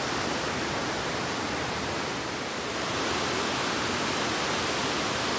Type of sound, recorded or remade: recorded